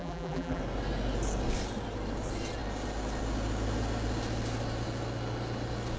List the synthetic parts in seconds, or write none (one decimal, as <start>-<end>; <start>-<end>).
0.0-0.6